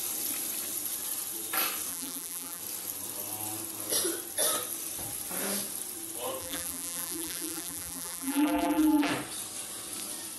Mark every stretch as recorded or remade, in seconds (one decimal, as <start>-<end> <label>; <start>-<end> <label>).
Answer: 0.0-1.9 recorded; 1.9-2.6 remade; 2.6-6.4 recorded; 6.4-9.1 remade; 9.1-10.4 recorded